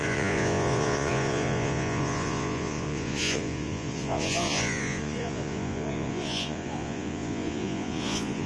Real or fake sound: fake